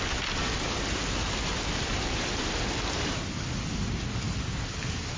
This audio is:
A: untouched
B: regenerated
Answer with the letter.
A